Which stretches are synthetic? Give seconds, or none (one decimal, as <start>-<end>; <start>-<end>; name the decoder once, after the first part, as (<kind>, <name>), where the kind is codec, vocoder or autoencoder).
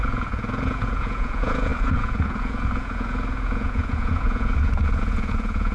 0.0-5.7 (vocoder, Vocos)